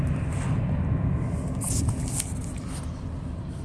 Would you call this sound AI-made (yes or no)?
no